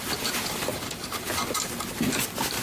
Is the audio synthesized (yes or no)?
no